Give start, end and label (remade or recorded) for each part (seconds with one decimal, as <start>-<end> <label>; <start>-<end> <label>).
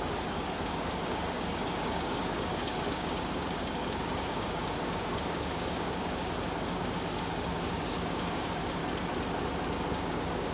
0.0-8.8 remade; 8.8-9.9 recorded; 9.9-10.5 remade